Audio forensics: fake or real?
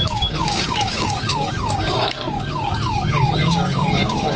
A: fake